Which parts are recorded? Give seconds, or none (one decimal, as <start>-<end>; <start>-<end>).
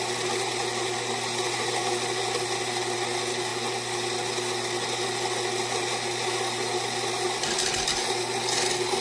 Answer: 0.0-9.0